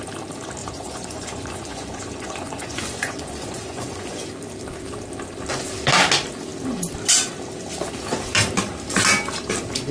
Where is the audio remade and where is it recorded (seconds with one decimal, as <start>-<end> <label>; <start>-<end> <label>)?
0.0-0.6 recorded; 0.6-4.3 remade; 4.3-9.9 recorded